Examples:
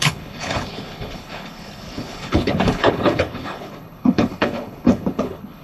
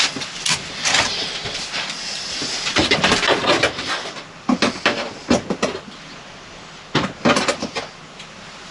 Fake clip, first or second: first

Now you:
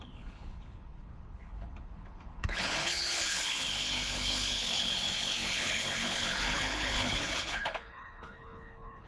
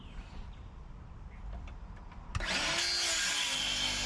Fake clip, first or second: first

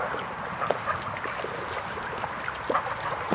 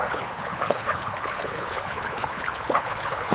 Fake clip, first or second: second